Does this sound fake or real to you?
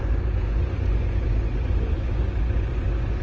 fake